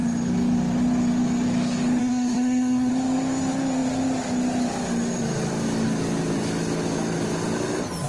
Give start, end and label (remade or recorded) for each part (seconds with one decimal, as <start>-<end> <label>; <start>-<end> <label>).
0.0-2.0 recorded; 2.0-2.9 remade; 2.9-8.1 recorded